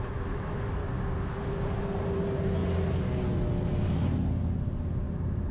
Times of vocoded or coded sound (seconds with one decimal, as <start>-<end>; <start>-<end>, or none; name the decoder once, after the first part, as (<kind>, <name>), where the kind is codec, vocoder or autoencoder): 0.8-1.8 (codec, DAC)